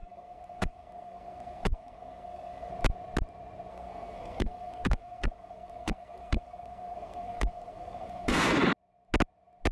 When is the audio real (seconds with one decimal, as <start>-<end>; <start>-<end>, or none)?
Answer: 2.7-3.7; 8.6-9.7

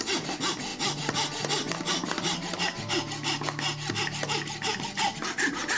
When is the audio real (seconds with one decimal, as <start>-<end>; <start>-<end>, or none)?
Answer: 0.0-5.8

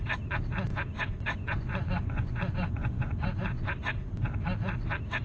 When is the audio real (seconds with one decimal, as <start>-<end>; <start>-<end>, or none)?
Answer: 0.0-0.7; 3.8-5.2

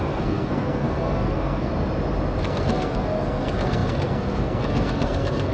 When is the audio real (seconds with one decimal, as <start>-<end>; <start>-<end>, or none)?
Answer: 1.7-2.4

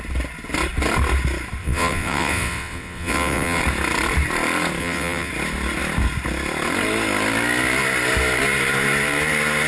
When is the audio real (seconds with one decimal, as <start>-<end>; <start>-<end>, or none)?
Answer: 0.0-1.6; 3.6-4.8; 5.3-9.7

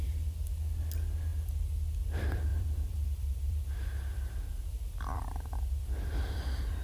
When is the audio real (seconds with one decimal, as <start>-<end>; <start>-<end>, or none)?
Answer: 0.0-2.5; 3.6-6.8

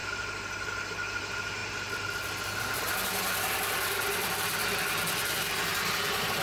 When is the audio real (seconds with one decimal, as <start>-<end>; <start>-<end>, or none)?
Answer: none